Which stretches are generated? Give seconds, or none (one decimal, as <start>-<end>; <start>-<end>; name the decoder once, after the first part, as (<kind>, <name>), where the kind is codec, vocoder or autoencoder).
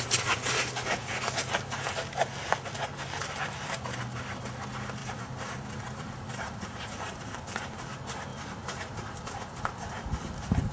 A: 5.0-7.2 (vocoder, BigVGAN v2); 8.3-9.6